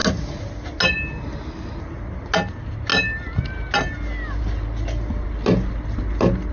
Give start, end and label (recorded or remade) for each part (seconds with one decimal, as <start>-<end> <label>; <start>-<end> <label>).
0.0-6.5 recorded